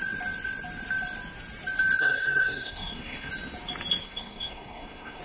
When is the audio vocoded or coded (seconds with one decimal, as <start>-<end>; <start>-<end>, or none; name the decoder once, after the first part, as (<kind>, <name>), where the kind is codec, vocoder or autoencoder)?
2.0-3.3 (codec, SNAC); 4.0-5.2